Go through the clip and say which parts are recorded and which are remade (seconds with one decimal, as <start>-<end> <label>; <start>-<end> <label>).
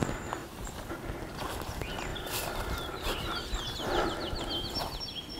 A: 0.0-0.4 recorded; 0.4-0.9 remade; 0.9-2.1 recorded; 2.1-3.6 remade; 3.6-5.4 recorded